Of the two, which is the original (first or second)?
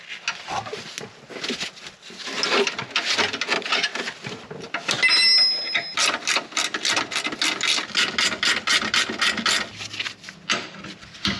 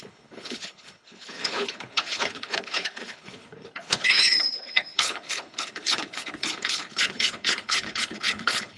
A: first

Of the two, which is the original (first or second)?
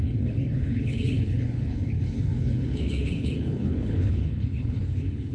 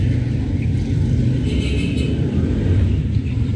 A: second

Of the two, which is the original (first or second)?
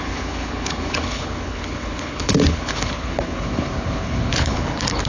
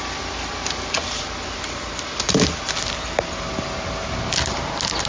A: second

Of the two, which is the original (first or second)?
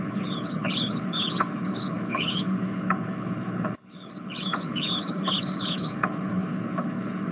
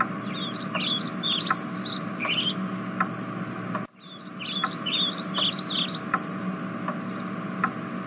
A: second